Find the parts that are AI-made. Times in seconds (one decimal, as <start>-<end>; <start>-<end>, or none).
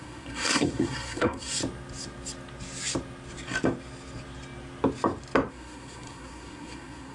0.0-1.6; 5.5-7.1